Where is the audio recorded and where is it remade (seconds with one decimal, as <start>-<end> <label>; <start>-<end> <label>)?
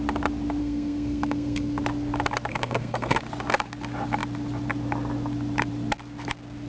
0.0-0.6 recorded; 0.6-1.8 remade; 1.8-2.5 recorded; 2.5-3.2 remade; 3.2-6.7 recorded